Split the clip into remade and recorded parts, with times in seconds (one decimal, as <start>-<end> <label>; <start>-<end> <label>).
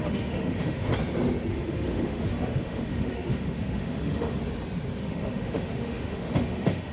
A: 0.0-0.9 remade; 0.9-1.5 recorded; 1.5-4.4 remade; 4.4-5.0 recorded; 5.0-6.9 remade